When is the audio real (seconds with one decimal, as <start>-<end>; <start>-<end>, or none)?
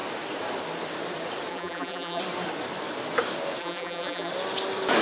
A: 0.0-1.5; 2.2-3.6; 4.3-5.0